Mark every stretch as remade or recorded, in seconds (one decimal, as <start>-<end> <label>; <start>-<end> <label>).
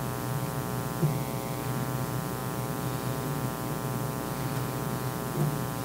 0.0-5.8 recorded